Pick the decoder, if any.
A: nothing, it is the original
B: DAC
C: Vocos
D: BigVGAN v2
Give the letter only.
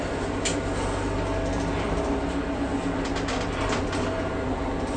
A